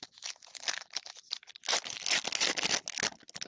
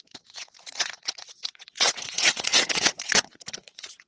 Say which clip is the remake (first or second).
second